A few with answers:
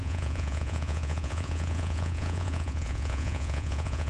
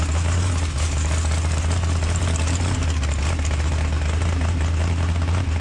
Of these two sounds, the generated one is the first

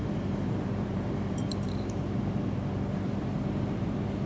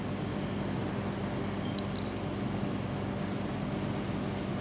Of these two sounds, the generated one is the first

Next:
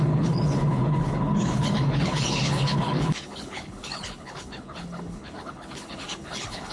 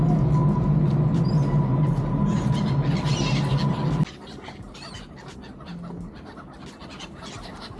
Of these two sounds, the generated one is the first